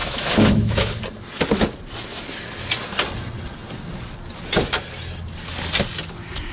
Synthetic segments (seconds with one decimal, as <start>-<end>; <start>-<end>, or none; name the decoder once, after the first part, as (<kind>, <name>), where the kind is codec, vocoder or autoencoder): 0.0-1.0 (autoencoder, DAC-VAE)